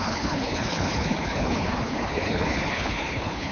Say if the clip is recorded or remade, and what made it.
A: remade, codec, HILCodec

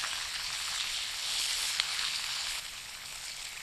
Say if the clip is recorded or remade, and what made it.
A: remade, codec, HILCodec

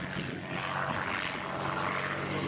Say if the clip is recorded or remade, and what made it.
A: recorded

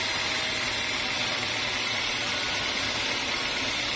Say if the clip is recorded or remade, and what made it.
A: recorded